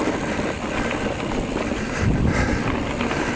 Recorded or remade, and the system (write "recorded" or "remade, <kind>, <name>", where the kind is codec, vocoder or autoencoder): recorded